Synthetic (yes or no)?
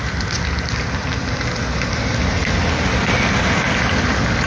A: no